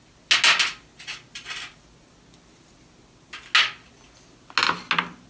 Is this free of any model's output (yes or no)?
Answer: yes